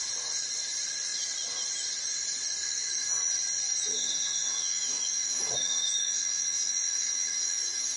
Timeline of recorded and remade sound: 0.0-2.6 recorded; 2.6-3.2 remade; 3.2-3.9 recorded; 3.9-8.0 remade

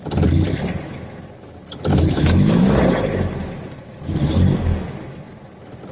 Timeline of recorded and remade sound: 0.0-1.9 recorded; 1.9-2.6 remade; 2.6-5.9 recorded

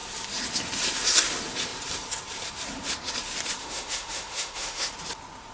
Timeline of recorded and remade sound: 0.0-3.6 recorded; 3.6-4.9 remade; 4.9-5.5 recorded

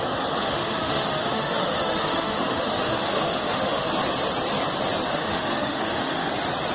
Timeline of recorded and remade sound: 0.0-0.4 recorded; 0.4-3.9 remade; 3.9-5.1 recorded; 5.1-6.3 remade; 6.3-6.7 recorded

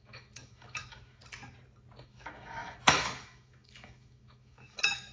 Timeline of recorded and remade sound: 0.0-1.2 remade; 1.2-2.0 recorded; 2.0-5.1 remade

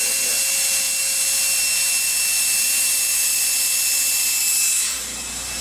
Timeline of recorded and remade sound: 0.0-5.6 recorded

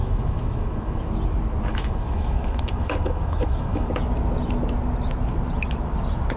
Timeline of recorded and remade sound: 0.0-1.1 remade; 1.1-1.7 recorded; 1.7-3.9 remade; 3.9-6.4 recorded

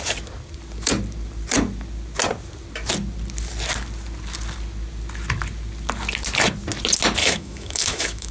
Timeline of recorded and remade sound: 0.0-7.2 recorded; 7.2-8.3 remade